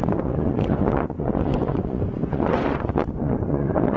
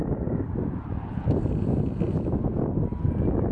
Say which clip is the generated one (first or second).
first